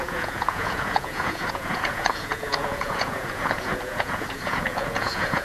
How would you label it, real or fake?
fake